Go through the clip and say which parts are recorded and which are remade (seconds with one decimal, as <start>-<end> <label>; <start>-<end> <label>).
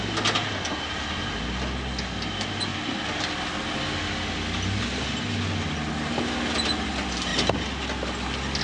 0.0-8.6 recorded